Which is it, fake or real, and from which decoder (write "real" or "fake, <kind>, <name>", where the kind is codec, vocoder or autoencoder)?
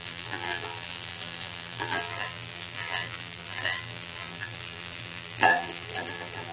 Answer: fake, vocoder, BigVGAN v2